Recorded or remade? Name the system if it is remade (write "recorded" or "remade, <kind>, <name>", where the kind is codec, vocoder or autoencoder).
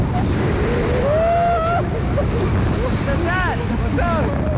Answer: recorded